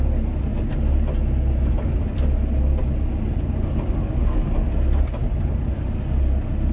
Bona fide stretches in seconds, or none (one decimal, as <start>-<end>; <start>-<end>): 0.0-6.7